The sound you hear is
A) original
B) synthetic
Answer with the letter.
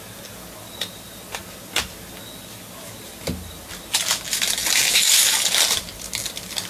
A